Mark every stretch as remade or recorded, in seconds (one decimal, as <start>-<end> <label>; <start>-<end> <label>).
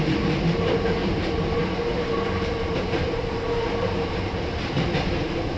0.0-1.0 recorded; 1.0-4.4 remade; 4.4-5.6 recorded